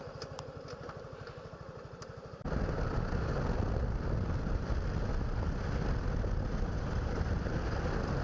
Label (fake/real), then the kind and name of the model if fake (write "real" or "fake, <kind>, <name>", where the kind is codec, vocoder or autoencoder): real